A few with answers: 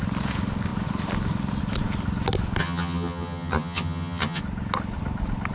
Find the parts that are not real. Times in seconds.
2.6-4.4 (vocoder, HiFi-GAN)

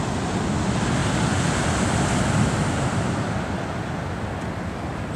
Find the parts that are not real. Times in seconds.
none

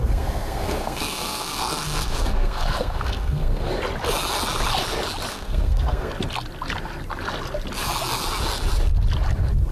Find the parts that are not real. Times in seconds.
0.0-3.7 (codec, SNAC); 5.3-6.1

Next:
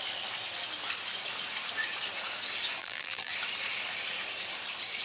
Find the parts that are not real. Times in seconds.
2.8-3.3 (vocoder, BigVGAN v2)

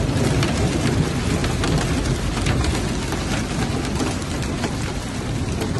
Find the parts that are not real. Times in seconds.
0.0-1.4 (vocoder, BigVGAN v2); 4.9-5.8

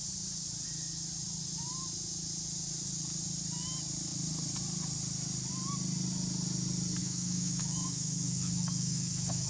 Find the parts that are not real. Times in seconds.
7.0-9.5 (autoencoder, DAC-VAE)

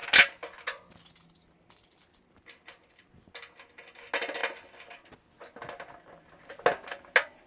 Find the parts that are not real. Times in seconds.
none

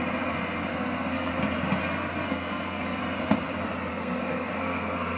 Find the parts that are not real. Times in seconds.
0.7-1.3 (codec, SNAC); 1.8-3.0; 3.9-5.2